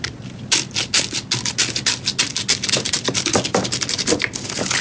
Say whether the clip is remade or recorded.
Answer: recorded